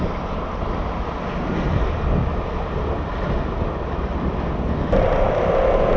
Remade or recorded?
recorded